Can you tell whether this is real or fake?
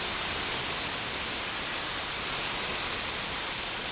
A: real